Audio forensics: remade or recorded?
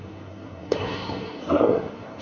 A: remade